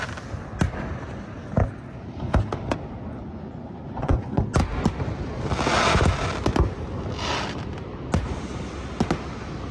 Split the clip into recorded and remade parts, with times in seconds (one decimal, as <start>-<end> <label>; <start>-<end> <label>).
0.0-3.2 recorded; 3.2-4.4 remade; 4.4-9.7 recorded